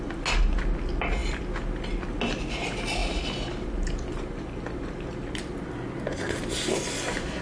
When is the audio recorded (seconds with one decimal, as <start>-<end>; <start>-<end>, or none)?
0.0-7.4